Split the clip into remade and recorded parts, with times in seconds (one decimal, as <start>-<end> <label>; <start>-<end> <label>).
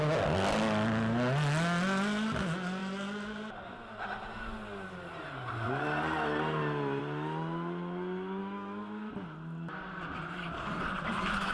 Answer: 0.0-8.4 recorded; 8.4-9.1 remade; 9.1-11.5 recorded